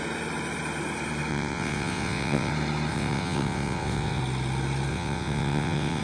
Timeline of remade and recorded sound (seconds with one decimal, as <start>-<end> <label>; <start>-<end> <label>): 0.0-1.3 recorded; 1.3-2.5 remade; 2.5-2.9 recorded; 2.9-4.2 remade; 4.2-4.9 recorded; 4.9-6.0 remade